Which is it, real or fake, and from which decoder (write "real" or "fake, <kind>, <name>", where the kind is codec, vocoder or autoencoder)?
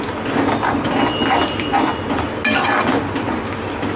real